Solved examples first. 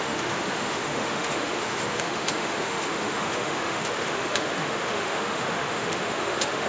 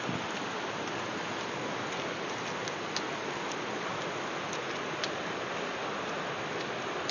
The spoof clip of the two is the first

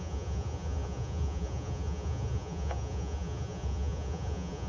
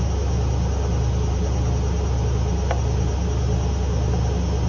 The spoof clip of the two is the first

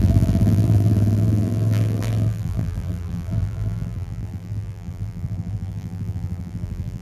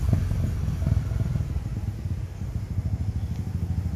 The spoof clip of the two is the first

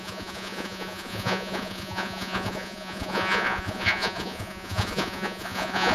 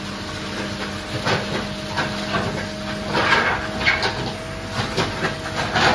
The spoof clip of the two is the first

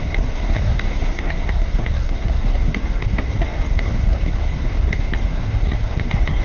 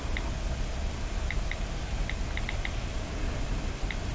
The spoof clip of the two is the first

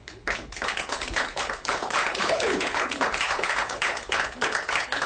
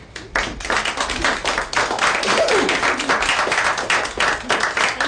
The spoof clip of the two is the first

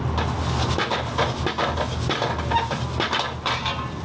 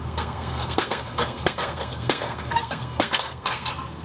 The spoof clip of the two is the second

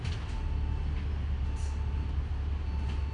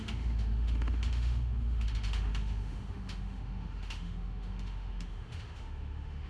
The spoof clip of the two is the second